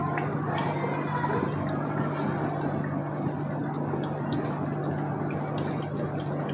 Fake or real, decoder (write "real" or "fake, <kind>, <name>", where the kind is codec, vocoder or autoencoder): real